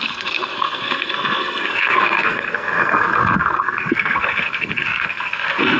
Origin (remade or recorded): remade